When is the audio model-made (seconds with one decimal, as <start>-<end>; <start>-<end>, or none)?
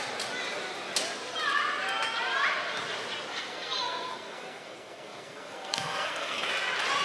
3.3-6.5